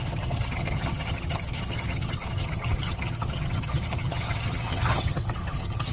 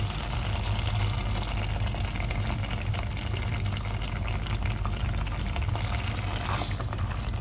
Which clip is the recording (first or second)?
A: second